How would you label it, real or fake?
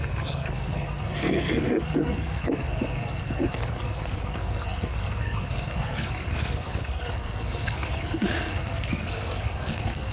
fake